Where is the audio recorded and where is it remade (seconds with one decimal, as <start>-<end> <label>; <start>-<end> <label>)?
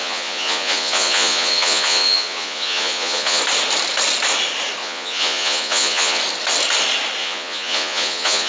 0.0-3.4 remade; 3.4-4.8 recorded; 4.8-6.2 remade; 6.2-7.2 recorded; 7.2-8.5 remade